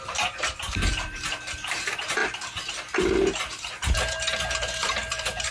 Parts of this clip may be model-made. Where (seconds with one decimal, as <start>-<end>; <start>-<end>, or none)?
0.0-2.2; 3.4-3.8; 4.4-5.5